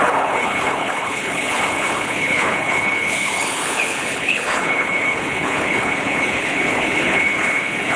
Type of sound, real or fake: fake